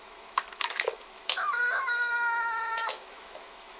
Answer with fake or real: fake